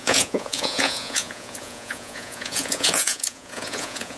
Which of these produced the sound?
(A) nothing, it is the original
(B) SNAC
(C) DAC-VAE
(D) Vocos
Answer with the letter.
D